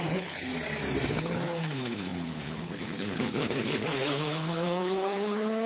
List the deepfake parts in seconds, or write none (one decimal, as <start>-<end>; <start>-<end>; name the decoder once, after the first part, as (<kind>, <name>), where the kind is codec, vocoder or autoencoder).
0.0-0.5 (codec, HILCodec); 1.1-5.7